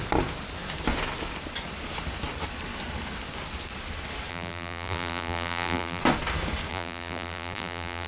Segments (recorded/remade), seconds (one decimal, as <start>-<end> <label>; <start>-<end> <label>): 0.0-4.3 recorded; 4.3-6.0 remade; 6.0-6.7 recorded; 6.7-8.1 remade